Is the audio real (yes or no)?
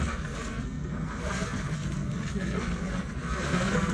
no